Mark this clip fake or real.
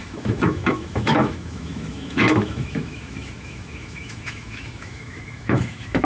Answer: fake